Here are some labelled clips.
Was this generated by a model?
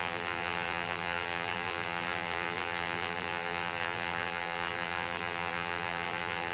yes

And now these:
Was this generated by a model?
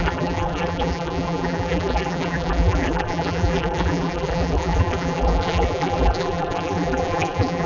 yes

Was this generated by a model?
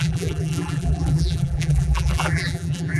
yes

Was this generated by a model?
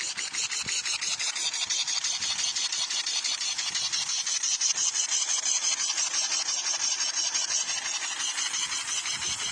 no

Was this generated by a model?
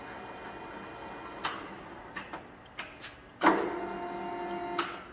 no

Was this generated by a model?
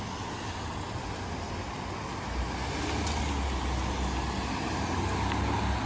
no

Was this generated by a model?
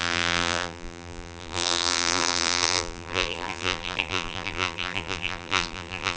yes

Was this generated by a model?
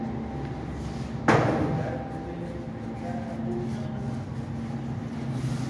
no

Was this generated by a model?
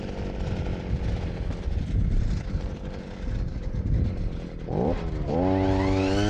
yes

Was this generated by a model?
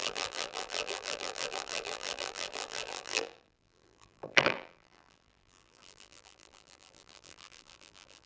yes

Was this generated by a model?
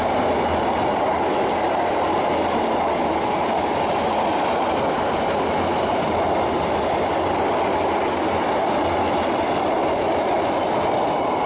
no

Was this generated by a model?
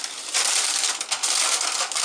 no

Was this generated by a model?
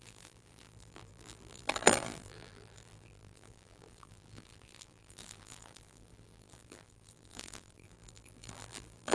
yes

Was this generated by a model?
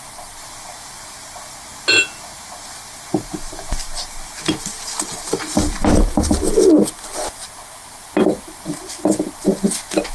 no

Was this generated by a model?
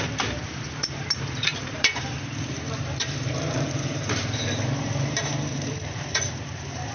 yes